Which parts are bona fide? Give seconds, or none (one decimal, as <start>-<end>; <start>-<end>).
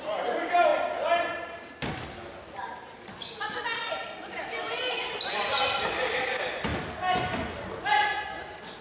0.0-8.8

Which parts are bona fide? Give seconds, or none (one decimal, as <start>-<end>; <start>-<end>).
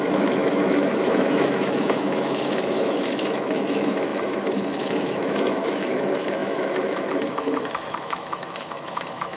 none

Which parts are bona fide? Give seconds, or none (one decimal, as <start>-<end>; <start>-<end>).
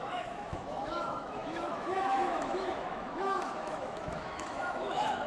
none